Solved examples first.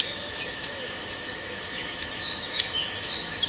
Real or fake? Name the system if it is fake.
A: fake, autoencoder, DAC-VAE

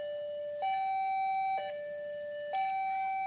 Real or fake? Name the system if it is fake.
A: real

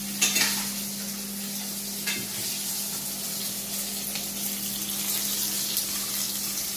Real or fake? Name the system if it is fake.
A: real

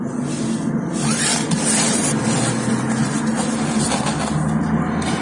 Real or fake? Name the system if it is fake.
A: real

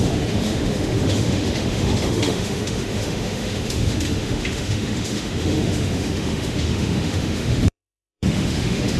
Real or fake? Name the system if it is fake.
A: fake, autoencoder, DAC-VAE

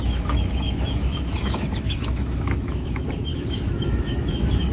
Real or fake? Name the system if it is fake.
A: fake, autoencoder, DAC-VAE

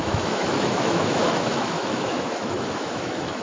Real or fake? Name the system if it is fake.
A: fake, autoencoder, DAC-VAE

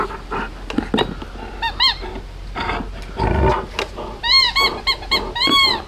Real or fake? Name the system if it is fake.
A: real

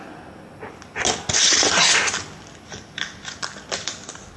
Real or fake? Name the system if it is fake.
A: real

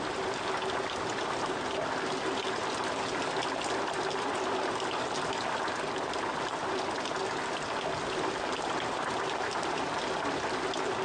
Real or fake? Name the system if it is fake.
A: real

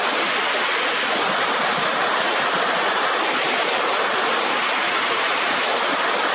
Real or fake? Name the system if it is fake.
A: real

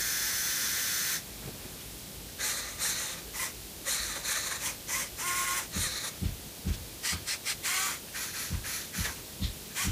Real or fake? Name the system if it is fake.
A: real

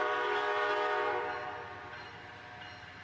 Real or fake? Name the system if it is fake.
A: real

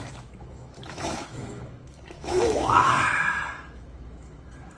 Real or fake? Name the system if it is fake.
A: fake, autoencoder, DAC-VAE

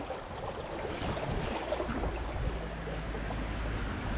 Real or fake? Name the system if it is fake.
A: real